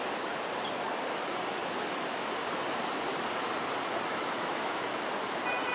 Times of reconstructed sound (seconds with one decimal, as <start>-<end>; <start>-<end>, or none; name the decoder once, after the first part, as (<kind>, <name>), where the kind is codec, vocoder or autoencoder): 4.1-5.2 (autoencoder, DAC-VAE)